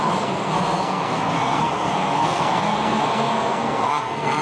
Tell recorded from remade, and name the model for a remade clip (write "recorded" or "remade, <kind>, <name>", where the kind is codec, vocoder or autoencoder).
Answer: remade, codec, SNAC